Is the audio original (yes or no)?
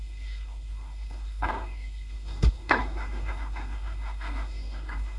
no